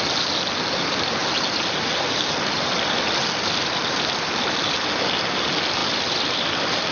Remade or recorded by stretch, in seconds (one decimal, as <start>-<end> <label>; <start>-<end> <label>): 0.0-5.8 recorded; 5.8-6.9 remade